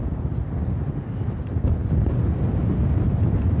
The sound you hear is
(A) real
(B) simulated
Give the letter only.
A